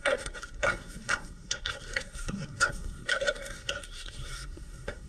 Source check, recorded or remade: remade